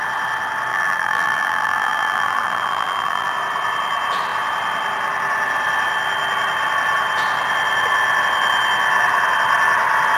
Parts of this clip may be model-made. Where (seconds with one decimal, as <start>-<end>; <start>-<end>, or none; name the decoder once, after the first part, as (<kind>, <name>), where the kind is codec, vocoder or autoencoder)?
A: 0.7-3.3 (vocoder, BigVGAN v2)